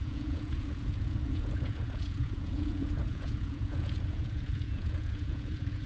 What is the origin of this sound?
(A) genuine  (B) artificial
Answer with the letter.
B